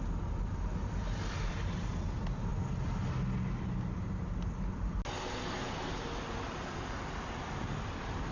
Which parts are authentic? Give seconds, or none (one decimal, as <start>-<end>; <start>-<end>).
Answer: 0.0-8.3